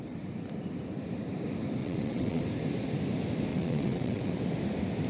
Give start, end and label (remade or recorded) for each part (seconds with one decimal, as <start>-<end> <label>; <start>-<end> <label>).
0.0-1.8 recorded; 1.8-2.4 remade; 2.4-3.5 recorded; 3.5-4.3 remade; 4.3-5.1 recorded